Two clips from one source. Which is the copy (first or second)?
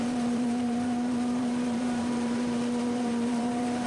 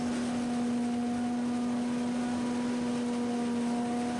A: first